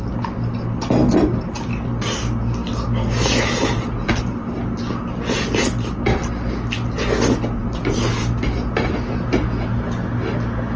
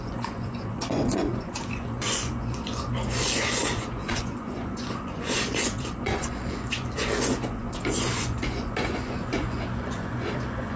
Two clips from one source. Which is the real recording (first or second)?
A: first